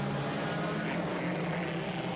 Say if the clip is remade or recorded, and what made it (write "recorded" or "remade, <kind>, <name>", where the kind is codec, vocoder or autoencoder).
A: recorded